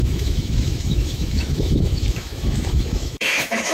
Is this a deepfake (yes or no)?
yes